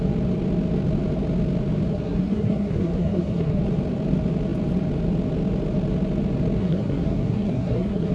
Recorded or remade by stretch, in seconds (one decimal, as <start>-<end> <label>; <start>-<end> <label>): 0.0-1.9 recorded; 1.9-3.6 remade; 3.6-6.6 recorded; 6.6-8.1 remade